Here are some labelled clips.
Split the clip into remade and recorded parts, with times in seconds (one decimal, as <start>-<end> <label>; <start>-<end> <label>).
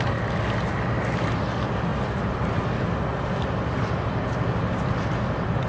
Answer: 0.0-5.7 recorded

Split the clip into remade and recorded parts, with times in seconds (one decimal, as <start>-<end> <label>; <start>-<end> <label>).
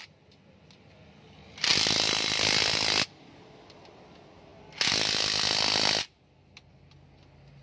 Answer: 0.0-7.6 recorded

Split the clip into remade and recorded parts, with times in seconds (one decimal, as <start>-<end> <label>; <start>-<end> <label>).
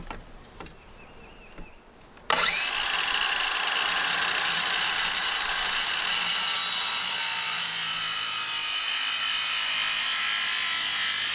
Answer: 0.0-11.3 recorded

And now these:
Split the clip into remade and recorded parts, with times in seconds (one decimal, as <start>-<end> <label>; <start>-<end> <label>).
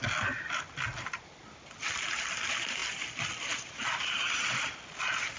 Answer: 0.0-5.4 recorded